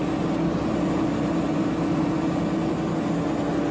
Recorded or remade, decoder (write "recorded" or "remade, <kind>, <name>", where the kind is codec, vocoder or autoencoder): recorded